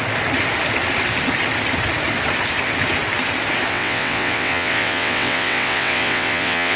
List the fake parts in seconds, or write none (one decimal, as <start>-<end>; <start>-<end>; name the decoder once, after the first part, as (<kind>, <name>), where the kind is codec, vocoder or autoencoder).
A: 3.7-6.8 (vocoder, WaveNeXt)